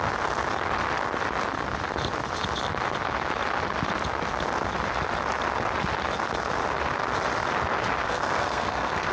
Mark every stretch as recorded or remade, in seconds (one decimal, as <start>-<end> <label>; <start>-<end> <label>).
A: 0.0-8.0 recorded; 8.0-9.1 remade